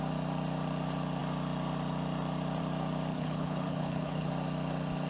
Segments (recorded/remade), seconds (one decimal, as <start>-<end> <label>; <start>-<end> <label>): 0.0-3.1 recorded; 3.1-4.3 remade; 4.3-5.1 recorded